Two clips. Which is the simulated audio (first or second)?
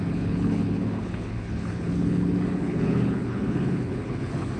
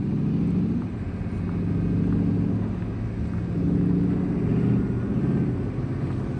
first